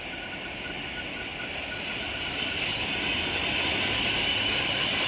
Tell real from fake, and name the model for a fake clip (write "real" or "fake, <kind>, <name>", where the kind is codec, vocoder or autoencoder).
real